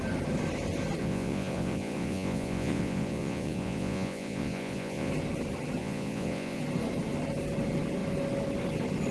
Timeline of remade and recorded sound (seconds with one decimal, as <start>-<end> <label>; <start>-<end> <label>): 0.0-1.0 recorded; 1.0-5.1 remade; 5.1-5.8 recorded; 5.8-6.6 remade; 6.6-9.1 recorded